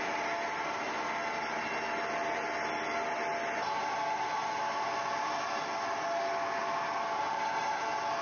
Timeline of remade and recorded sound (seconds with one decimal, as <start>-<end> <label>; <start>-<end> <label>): 0.0-8.2 recorded